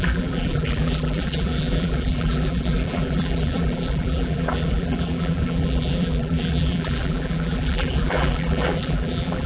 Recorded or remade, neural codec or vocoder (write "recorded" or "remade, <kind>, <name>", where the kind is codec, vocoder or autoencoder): remade, vocoder, BigVGAN v2